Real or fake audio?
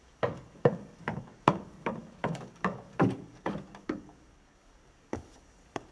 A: fake